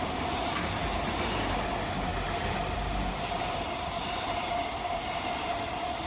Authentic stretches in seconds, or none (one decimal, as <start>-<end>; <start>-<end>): 0.0-6.1